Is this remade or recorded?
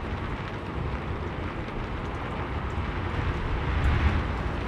recorded